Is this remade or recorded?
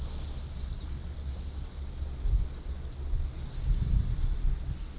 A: recorded